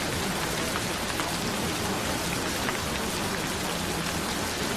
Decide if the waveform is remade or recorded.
recorded